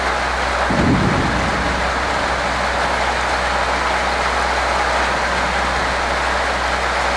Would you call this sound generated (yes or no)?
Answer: no